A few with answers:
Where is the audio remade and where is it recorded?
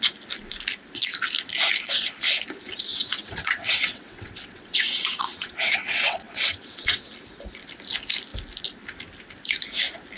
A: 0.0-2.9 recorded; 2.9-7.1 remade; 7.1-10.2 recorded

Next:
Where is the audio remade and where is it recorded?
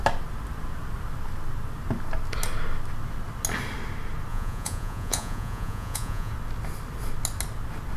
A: 0.0-4.3 recorded; 4.3-6.3 remade; 6.3-8.0 recorded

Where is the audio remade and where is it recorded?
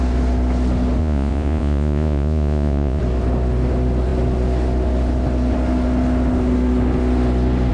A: 0.0-1.0 recorded; 1.0-3.0 remade; 3.0-7.7 recorded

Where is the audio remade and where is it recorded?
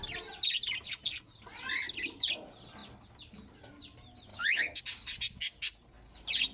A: 0.0-4.3 recorded; 4.3-4.8 remade; 4.8-6.5 recorded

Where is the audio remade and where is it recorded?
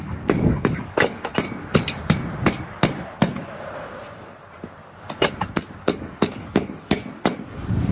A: 0.0-1.3 remade; 1.3-5.8 recorded; 5.8-7.0 remade; 7.0-7.5 recorded; 7.5-7.9 remade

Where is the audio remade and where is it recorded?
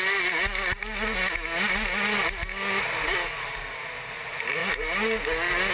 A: 0.0-5.7 recorded